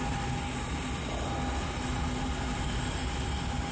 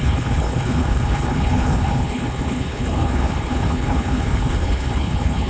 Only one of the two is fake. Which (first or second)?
second